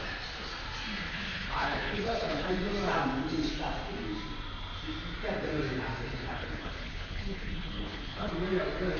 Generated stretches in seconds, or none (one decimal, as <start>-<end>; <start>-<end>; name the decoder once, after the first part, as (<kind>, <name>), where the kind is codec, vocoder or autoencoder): 1.1-2.5 (codec, HILCodec); 6.1-8.3